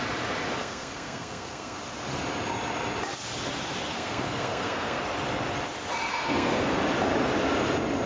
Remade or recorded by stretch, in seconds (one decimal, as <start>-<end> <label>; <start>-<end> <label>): 0.0-0.6 recorded; 0.6-1.8 remade; 1.8-3.9 recorded; 3.9-5.0 remade; 5.0-6.1 recorded; 6.1-6.8 remade; 6.8-8.1 recorded